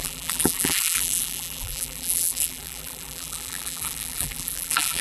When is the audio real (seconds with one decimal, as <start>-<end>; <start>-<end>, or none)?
none